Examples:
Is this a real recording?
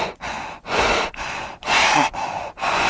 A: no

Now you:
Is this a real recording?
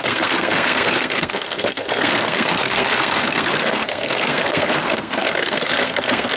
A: no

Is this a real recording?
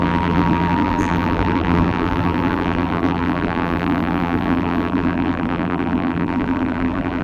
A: no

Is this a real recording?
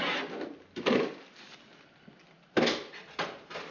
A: yes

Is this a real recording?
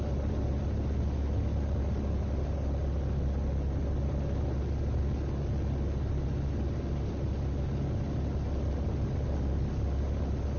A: yes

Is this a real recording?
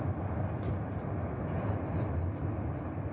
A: yes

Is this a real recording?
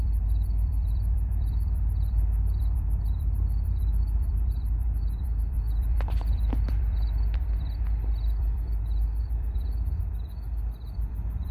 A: no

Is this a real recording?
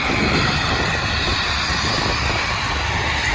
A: yes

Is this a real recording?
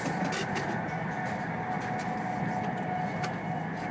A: yes